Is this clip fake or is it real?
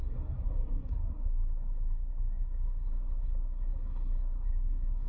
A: fake